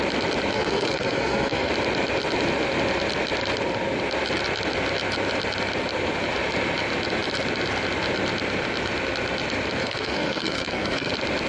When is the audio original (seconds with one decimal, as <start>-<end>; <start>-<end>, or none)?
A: 0.0-0.5; 1.7-9.8; 11.1-11.5